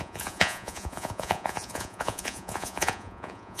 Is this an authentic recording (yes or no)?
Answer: no